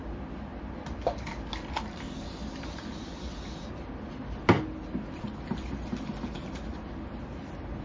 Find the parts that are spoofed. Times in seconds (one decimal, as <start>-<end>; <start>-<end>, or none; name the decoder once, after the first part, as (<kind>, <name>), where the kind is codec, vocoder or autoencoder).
none